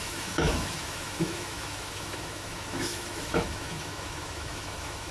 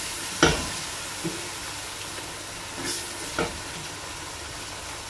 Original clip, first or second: second